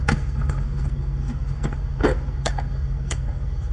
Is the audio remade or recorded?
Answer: remade